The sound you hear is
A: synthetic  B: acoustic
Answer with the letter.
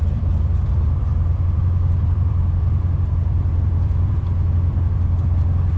A